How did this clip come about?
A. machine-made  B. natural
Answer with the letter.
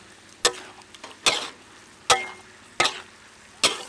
B